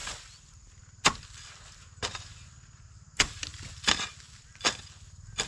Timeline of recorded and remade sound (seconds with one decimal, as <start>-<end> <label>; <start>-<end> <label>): 0.0-3.5 recorded; 3.5-4.4 remade; 4.4-5.5 recorded